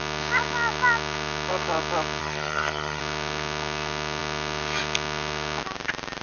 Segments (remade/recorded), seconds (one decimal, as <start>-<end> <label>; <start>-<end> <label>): 0.0-2.2 recorded; 2.2-3.0 remade; 3.0-6.2 recorded